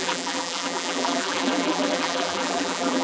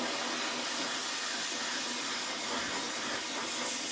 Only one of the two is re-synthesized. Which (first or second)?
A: first